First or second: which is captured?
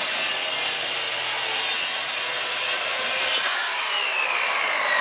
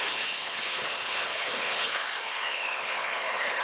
first